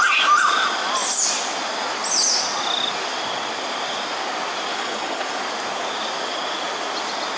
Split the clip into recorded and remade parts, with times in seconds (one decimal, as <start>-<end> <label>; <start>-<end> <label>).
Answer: 0.0-4.7 recorded; 4.7-5.4 remade; 5.4-7.4 recorded

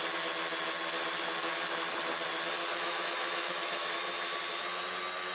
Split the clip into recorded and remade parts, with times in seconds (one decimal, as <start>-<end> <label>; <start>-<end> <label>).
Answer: 0.0-2.6 recorded; 2.6-4.0 remade; 4.0-5.3 recorded

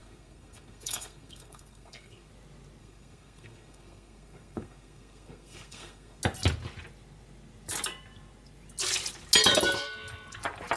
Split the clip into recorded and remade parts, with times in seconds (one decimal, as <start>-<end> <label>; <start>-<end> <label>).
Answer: 0.0-2.3 remade; 2.3-2.8 recorded; 2.8-6.2 remade; 6.2-10.8 recorded